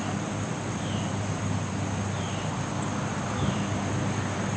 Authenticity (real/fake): real